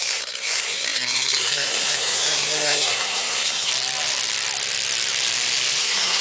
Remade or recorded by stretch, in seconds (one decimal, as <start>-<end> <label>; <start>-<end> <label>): 0.0-3.7 remade; 3.7-5.8 recorded; 5.8-6.2 remade